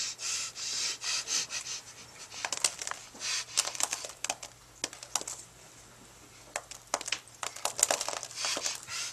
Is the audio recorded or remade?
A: recorded